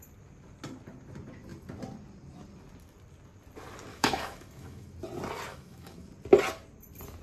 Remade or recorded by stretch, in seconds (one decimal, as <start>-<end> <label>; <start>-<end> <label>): 0.0-3.9 recorded; 3.9-4.9 remade; 4.9-5.5 recorded; 5.5-6.1 remade; 6.1-7.2 recorded